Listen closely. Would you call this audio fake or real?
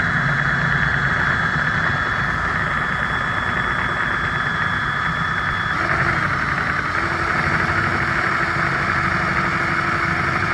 real